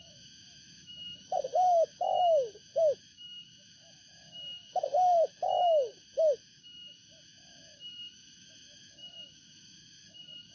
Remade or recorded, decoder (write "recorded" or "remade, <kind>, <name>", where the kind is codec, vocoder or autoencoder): remade, autoencoder, DAC-VAE